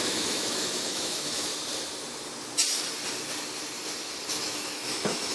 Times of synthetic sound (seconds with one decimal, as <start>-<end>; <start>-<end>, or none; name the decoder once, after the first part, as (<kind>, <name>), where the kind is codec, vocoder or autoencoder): 0.0-1.5 (autoencoder, DAC-VAE); 4.3-5.3